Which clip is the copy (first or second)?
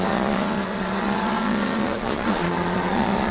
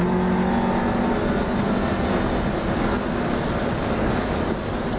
first